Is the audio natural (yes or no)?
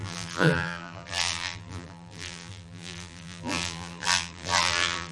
no